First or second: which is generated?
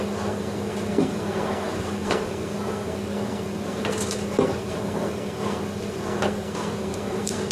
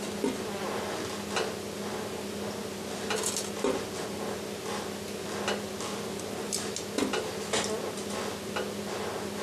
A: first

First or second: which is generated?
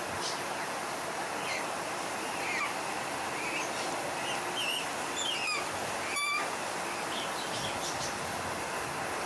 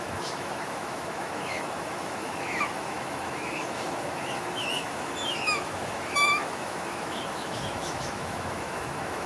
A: second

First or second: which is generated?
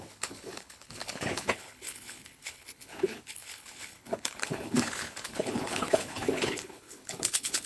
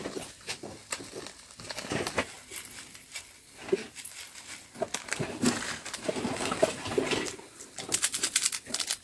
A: first